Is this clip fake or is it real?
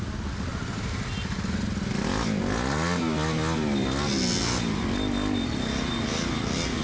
real